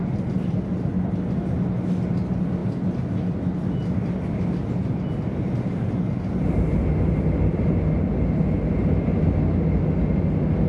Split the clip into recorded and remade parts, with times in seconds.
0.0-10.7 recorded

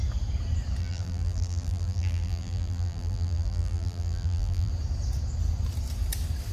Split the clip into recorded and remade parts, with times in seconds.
0.0-0.8 recorded; 0.8-4.7 remade; 4.7-6.5 recorded

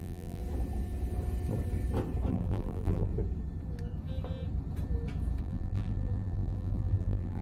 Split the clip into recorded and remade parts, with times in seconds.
0.0-0.4 remade; 0.4-2.3 recorded; 2.3-3.1 remade; 3.1-5.4 recorded; 5.4-7.4 remade